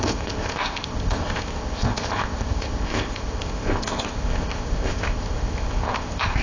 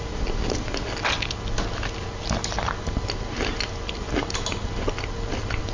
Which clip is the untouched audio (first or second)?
second